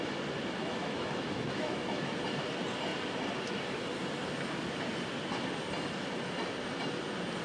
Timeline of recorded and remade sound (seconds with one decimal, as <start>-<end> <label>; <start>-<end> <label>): 0.0-0.6 recorded; 0.6-2.0 remade; 2.0-7.4 recorded